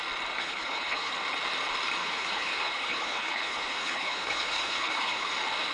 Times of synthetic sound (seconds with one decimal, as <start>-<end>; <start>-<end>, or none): 0.4-1.1; 2.0-5.3